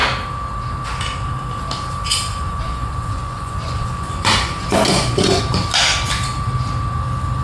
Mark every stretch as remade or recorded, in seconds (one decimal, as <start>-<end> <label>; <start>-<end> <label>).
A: 0.0-2.3 recorded; 2.3-5.4 remade; 5.4-7.4 recorded